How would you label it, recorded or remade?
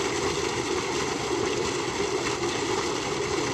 recorded